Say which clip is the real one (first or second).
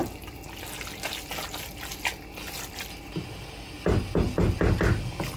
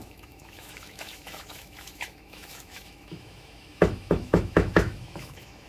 first